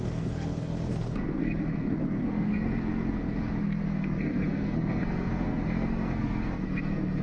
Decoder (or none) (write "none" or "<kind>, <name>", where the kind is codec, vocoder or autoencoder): codec, SNAC